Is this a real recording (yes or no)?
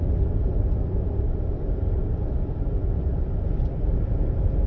yes